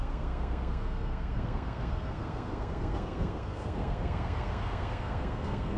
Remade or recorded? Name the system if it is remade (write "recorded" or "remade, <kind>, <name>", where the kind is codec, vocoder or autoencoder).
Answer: remade, codec, SNAC